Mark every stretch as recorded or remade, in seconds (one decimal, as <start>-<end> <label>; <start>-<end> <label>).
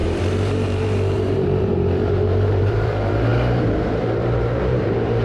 0.0-5.2 remade